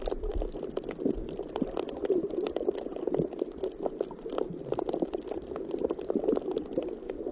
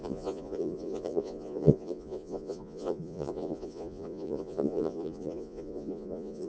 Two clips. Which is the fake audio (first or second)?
second